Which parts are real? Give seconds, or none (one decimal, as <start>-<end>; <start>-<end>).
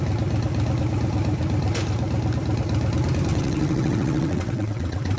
0.0-3.3